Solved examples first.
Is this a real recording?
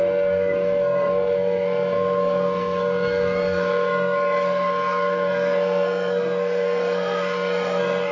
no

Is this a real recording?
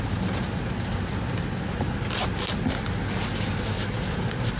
yes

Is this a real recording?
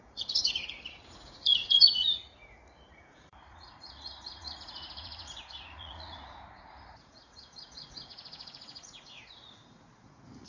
no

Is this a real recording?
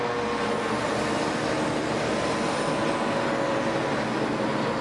yes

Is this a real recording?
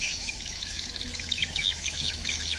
no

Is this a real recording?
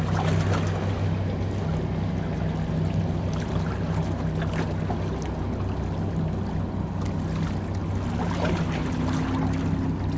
yes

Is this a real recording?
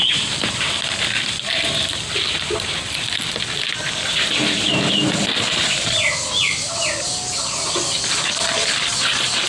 yes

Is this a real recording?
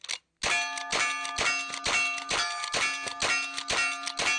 yes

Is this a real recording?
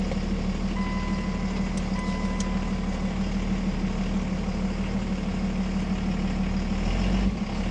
yes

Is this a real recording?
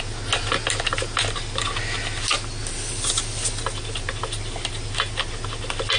yes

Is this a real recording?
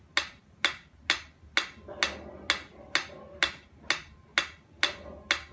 yes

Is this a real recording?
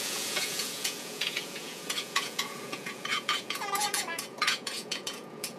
no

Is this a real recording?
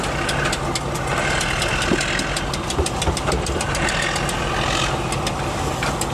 yes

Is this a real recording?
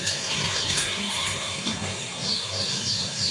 no